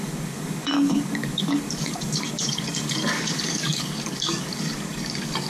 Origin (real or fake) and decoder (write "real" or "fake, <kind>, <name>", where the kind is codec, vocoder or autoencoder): fake, codec, DAC